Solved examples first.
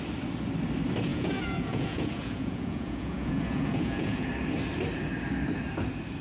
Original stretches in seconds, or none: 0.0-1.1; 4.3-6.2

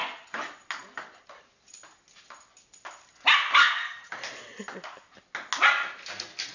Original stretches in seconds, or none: 0.0-3.6; 4.1-6.5

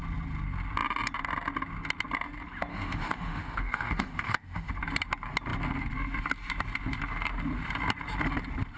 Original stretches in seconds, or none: 0.0-2.7; 4.7-8.8

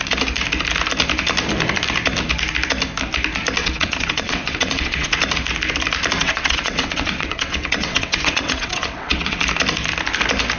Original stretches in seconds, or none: 0.0-3.6; 5.2-6.2; 9.4-10.6

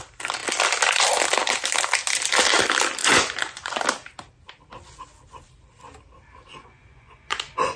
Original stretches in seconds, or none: 0.0-3.0; 3.8-6.5

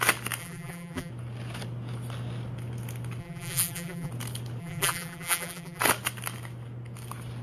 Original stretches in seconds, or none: 0.0-0.4; 1.1-3.2; 4.1-4.6; 5.8-7.4